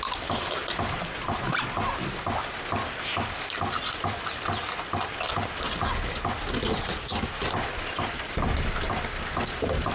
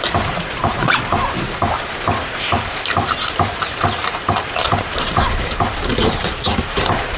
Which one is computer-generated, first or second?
second